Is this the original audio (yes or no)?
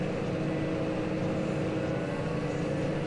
yes